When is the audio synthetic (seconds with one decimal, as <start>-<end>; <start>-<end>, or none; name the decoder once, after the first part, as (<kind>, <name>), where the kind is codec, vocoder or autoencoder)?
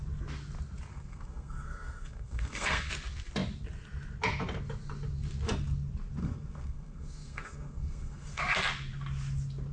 0.9-2.9 (codec, SNAC); 6.2-8.4